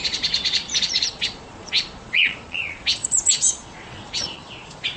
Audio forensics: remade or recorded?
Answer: remade